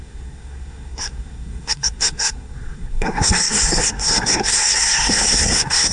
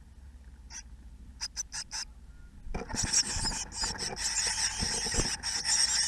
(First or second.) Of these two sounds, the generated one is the first